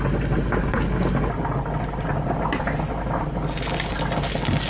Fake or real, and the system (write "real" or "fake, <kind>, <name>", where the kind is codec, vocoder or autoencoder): real